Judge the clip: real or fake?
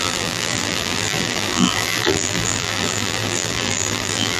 fake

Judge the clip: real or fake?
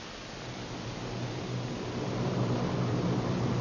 real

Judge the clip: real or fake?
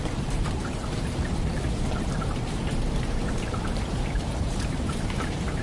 fake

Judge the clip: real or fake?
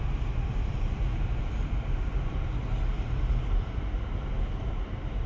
real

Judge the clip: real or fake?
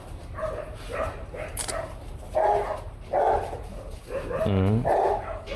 fake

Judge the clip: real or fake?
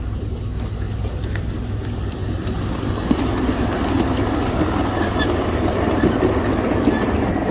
fake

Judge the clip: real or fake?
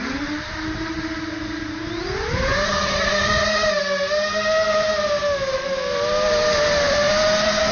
fake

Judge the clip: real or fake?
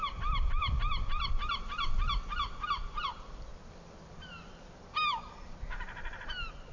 fake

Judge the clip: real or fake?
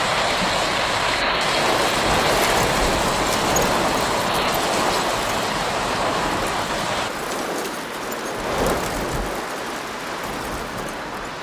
real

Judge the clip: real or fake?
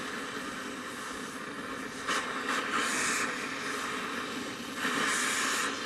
real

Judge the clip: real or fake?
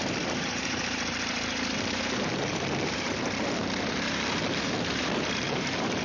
fake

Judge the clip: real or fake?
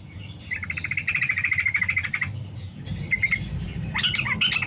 real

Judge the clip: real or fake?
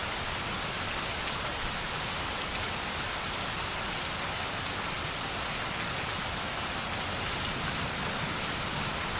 real